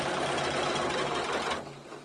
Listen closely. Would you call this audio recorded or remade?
recorded